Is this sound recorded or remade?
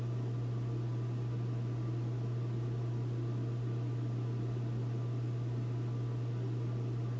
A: recorded